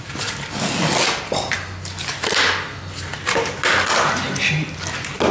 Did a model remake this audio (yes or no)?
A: no